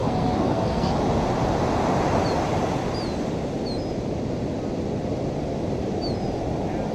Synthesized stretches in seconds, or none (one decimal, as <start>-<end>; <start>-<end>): 0.0-1.0

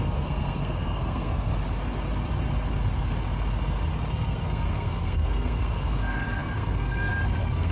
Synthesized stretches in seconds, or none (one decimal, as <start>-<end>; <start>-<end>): 0.0-1.5; 4.1-7.7

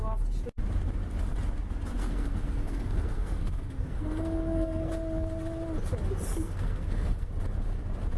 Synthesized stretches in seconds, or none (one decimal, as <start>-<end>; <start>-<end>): 2.0-4.9; 6.3-7.3

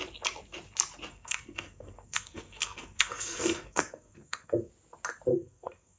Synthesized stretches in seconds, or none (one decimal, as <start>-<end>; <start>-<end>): 1.1-4.7; 5.3-6.0

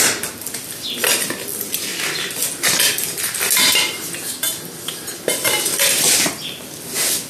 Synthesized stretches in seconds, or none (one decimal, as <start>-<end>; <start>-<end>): none

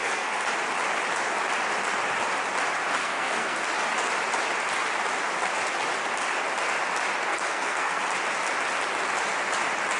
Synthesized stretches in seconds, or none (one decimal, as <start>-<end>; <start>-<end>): 0.0-0.5; 3.0-3.6; 7.3-8.0

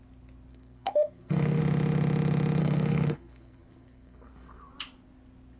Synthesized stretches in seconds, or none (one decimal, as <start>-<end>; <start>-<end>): 0.5-1.6; 2.6-4.7

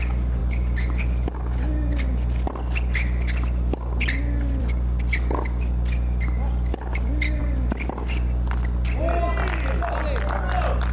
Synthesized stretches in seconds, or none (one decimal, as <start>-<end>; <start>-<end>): none